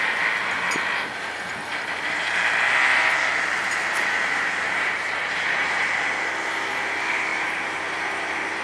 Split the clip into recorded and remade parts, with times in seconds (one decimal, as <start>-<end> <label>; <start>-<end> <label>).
0.0-3.6 recorded; 3.6-5.9 remade; 5.9-7.3 recorded; 7.3-8.6 remade

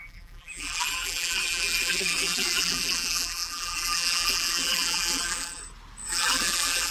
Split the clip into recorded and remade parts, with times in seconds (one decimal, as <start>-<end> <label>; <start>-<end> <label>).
0.0-5.6 remade; 5.6-6.1 recorded; 6.1-6.9 remade